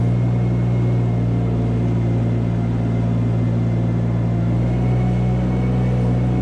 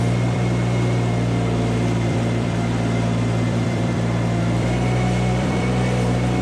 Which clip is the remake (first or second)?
second